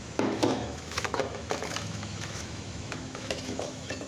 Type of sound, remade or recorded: remade